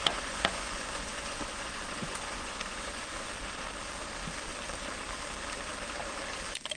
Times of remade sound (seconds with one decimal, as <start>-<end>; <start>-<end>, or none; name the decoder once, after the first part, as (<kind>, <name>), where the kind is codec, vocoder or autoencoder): 0.0-3.3 (vocoder, Vocos)